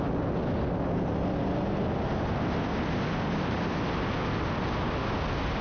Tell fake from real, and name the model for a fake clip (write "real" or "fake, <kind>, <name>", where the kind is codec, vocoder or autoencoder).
real